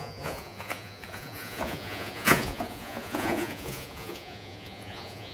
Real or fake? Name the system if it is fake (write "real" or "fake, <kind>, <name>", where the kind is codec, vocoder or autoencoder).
fake, vocoder, Vocos